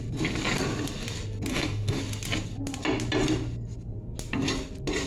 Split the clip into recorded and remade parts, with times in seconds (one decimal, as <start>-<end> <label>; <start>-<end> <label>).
0.0-1.5 recorded; 1.5-2.0 remade; 2.0-5.1 recorded